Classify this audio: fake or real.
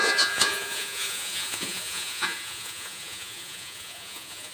fake